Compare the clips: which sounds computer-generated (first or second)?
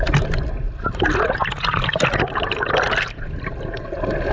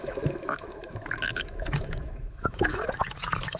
second